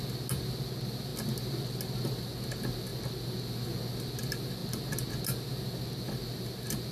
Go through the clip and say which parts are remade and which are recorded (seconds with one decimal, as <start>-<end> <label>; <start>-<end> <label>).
0.0-6.9 recorded